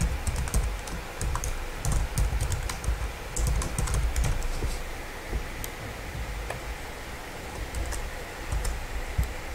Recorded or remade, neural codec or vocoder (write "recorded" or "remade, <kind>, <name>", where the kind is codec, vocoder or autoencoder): recorded